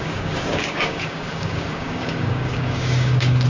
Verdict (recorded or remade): remade